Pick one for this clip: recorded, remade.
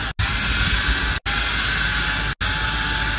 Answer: recorded